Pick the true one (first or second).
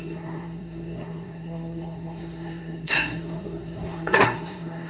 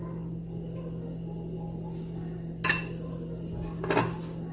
second